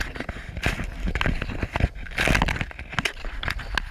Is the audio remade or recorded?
recorded